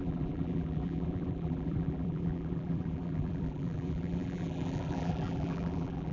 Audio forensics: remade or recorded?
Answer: remade